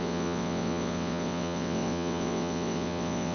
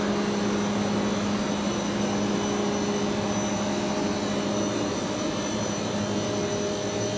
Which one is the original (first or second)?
second